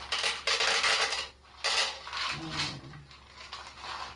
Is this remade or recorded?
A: recorded